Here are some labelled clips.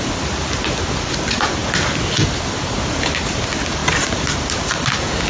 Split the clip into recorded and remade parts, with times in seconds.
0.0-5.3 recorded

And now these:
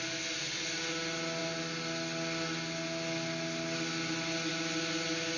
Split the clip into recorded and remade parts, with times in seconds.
0.0-5.4 recorded

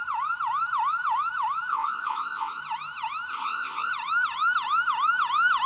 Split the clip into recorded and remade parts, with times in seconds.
0.0-1.7 recorded; 1.7-2.6 remade; 2.6-3.3 recorded; 3.3-3.9 remade; 3.9-5.7 recorded

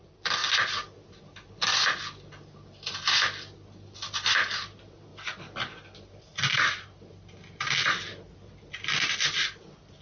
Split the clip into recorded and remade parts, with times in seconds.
0.0-10.0 recorded

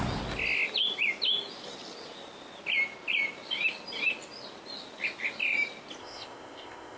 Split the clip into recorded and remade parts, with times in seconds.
0.0-6.0 recorded; 6.0-7.0 remade

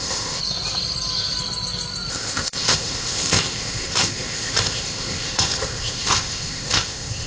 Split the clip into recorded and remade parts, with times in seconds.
0.0-0.4 remade; 0.4-2.1 recorded; 2.1-7.3 remade

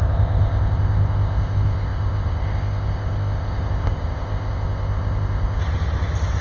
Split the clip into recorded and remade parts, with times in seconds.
0.0-5.6 remade; 5.6-6.4 recorded